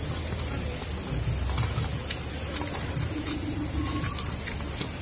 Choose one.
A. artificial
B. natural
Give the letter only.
B